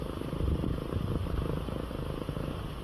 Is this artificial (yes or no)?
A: no